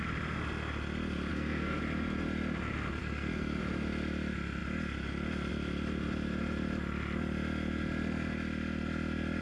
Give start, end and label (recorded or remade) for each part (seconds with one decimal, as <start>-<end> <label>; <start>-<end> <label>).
0.0-1.3 recorded; 1.3-1.8 remade; 1.8-3.0 recorded; 3.0-3.6 remade; 3.6-9.4 recorded